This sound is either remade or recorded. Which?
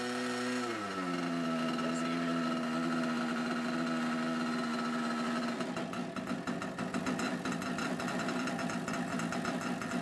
recorded